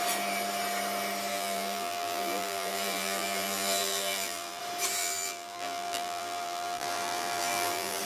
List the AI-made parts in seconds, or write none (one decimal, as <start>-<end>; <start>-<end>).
1.3-4.6; 5.0-8.0